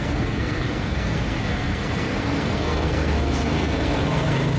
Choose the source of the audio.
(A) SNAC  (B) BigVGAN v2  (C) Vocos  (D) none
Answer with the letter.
A